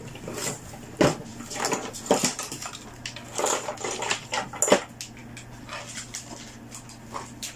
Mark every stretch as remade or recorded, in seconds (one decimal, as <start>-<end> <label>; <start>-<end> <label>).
0.0-7.6 recorded